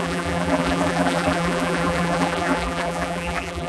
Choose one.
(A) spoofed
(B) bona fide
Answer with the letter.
A